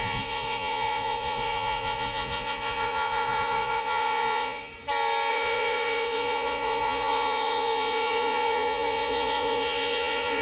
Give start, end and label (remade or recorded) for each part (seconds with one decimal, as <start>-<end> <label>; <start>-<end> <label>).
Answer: 0.0-4.7 remade; 4.7-5.3 recorded; 5.3-10.4 remade